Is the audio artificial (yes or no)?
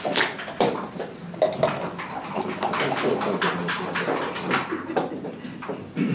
no